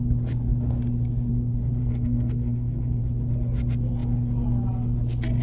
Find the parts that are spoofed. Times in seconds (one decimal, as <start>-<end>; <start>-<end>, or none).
1.8-3.0